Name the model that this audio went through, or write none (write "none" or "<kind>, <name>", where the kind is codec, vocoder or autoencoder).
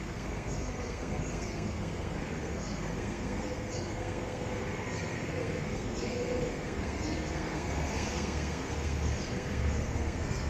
codec, SNAC